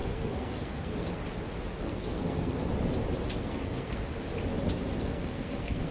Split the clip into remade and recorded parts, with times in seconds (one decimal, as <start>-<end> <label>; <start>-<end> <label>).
0.0-1.2 remade; 1.2-1.8 recorded; 1.8-2.6 remade; 2.6-3.4 recorded; 3.4-4.0 remade; 4.0-5.0 recorded; 5.0-5.9 remade